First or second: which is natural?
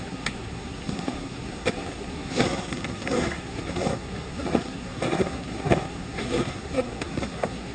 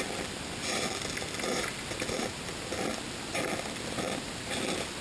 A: second